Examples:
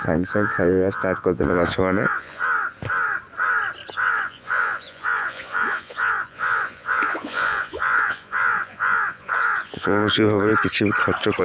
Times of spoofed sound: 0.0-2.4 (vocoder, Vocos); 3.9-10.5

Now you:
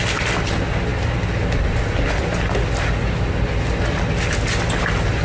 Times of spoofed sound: none

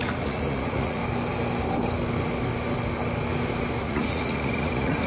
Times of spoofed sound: 0.0-1.0 (vocoder, Vocos); 3.8-5.1

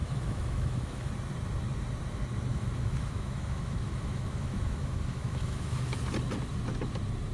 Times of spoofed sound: 0.0-1.1 (autoencoder, DAC-VAE); 2.5-6.0

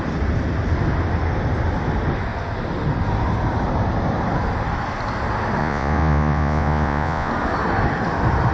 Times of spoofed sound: 5.6-7.3 (vocoder, Vocos)

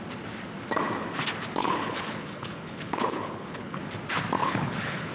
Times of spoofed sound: 1.6-3.8 (codec, HILCodec); 4.4-5.1